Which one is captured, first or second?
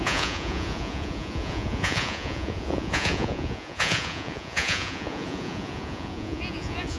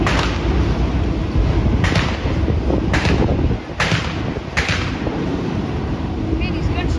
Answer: second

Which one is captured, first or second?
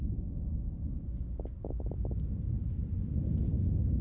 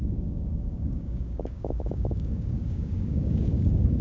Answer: first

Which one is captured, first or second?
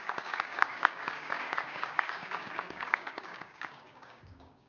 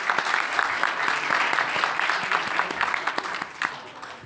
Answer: second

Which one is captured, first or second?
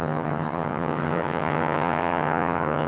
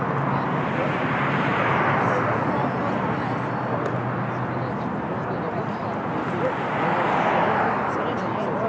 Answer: second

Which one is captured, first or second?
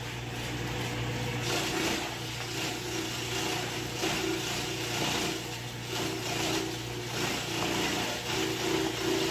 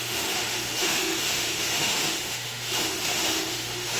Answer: first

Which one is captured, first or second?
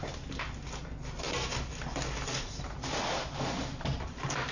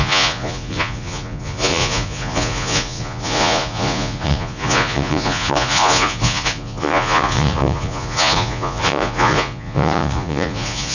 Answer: first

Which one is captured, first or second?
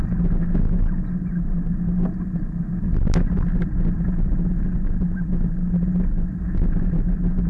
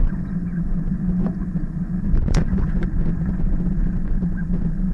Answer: first